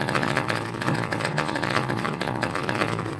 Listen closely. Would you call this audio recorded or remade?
remade